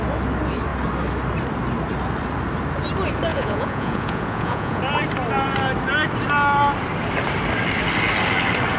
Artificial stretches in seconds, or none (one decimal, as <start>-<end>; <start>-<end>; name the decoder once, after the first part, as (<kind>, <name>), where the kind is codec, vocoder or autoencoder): 3.3-4.8 (vocoder, Vocos)